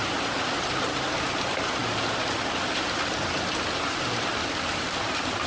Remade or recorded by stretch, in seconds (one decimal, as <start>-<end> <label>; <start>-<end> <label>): 0.0-1.8 remade; 1.8-4.8 recorded; 4.8-5.5 remade